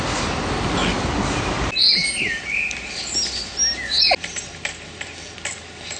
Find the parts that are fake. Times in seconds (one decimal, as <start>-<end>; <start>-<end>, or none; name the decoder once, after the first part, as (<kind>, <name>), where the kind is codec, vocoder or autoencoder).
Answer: none